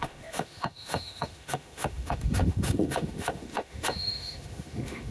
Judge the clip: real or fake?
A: fake